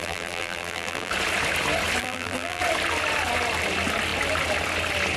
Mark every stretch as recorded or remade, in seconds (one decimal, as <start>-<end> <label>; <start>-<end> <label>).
0.0-1.1 remade; 1.1-2.0 recorded; 2.0-2.6 remade; 2.6-5.2 recorded